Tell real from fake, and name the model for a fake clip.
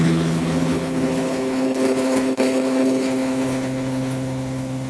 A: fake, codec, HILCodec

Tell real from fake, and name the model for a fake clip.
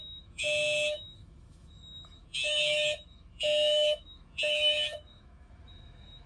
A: fake, autoencoder, DAC-VAE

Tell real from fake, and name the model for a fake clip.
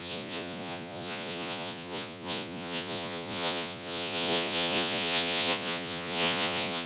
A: fake, vocoder, Vocos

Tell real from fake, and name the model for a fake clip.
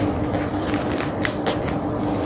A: real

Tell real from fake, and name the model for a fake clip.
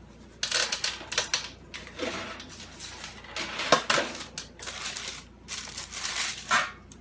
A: real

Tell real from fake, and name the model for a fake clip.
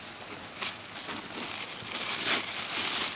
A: real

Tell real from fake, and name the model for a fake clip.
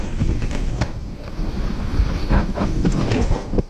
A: fake, codec, DAC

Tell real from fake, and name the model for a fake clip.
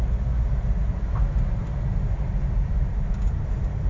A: real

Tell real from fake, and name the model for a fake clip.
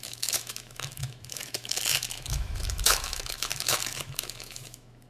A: fake, autoencoder, DAC-VAE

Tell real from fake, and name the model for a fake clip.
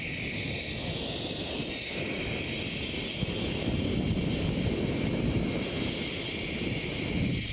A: real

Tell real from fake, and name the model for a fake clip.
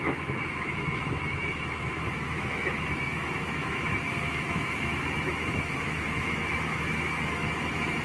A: fake, autoencoder, DAC-VAE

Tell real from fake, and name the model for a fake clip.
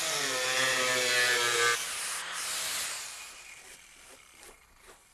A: real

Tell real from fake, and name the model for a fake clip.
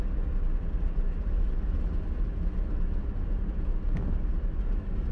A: real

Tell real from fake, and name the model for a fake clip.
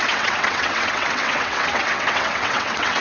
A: fake, vocoder, WaveNeXt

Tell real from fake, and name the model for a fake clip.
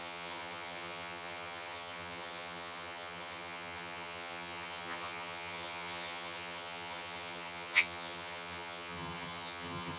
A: fake, vocoder, HiFi-GAN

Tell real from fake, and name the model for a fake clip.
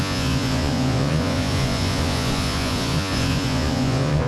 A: fake, vocoder, Vocos